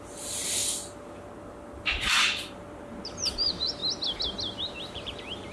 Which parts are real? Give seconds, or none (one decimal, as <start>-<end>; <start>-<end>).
0.6-2.0; 3.8-4.6